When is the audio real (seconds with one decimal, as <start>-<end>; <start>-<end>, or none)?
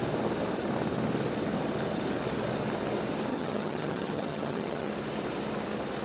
0.0-3.3; 4.9-6.0